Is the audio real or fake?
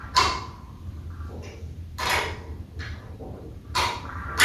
fake